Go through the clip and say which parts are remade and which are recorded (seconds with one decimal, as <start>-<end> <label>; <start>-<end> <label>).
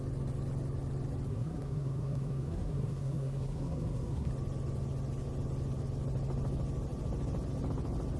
0.0-1.3 recorded; 1.3-4.3 remade; 4.3-8.2 recorded